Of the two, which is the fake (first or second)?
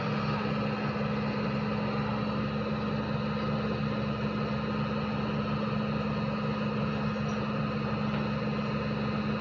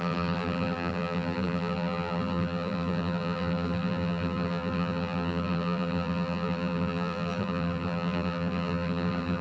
second